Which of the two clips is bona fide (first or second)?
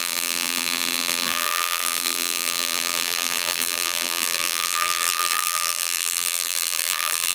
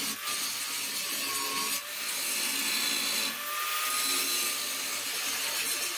second